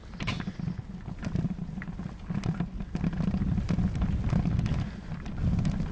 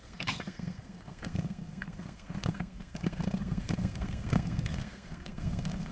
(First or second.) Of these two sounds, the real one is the first